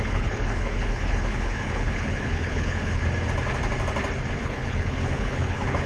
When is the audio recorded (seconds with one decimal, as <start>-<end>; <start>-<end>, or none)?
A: 3.0-4.4